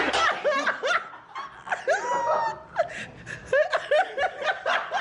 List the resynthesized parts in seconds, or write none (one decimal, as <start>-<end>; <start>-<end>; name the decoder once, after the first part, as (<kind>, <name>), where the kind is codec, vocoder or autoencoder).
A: none